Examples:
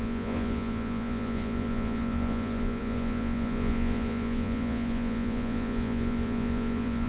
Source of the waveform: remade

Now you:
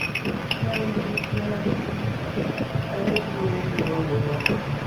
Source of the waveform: recorded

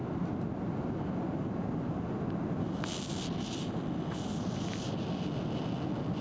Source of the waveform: recorded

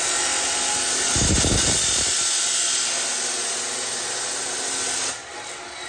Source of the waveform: recorded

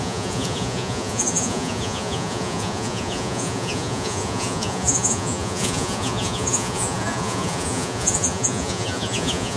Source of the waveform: remade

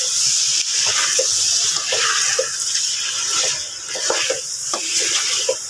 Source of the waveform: recorded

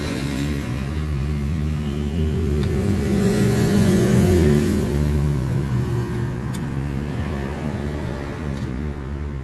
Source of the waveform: remade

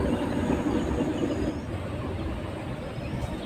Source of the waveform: recorded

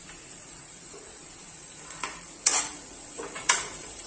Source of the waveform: remade